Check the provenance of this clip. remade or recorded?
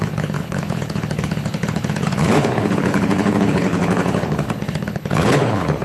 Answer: remade